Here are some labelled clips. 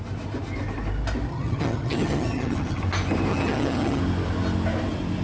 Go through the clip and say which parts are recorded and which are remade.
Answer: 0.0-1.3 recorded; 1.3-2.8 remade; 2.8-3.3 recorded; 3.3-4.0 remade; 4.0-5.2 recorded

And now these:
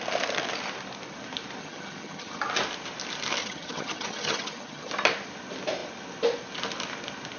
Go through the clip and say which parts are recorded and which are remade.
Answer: 0.0-1.6 recorded; 1.6-2.4 remade; 2.4-3.4 recorded; 3.4-4.9 remade; 4.9-7.4 recorded

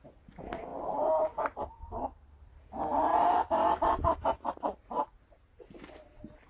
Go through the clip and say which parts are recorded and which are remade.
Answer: 0.0-6.5 recorded

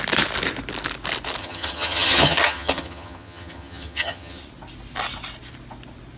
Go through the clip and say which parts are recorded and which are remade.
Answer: 0.0-1.4 recorded; 1.4-4.4 remade; 4.4-6.2 recorded

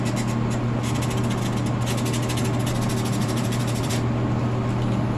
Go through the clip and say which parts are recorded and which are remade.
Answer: 0.0-3.2 recorded; 3.2-3.9 remade; 3.9-5.2 recorded

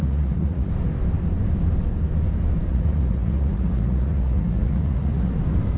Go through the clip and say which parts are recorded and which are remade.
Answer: 0.0-0.7 remade; 0.7-2.7 recorded; 2.7-5.3 remade; 5.3-5.8 recorded